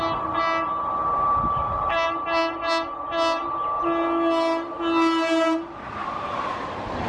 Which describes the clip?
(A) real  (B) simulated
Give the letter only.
A